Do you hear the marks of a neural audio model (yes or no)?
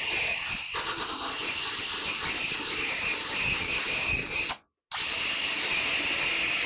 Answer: no